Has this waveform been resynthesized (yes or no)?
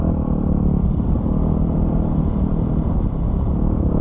yes